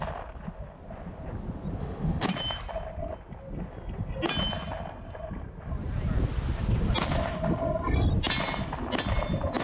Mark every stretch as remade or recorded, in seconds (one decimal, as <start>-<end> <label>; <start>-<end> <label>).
0.0-1.8 recorded; 1.8-2.3 remade; 2.3-9.6 recorded